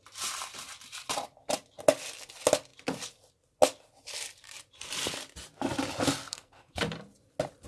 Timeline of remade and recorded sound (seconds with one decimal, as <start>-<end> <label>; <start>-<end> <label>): 0.0-6.2 recorded; 6.2-6.8 remade; 6.8-7.7 recorded